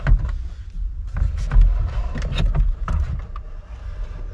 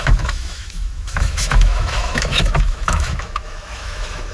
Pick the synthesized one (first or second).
second